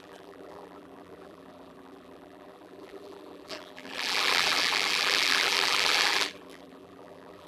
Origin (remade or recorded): remade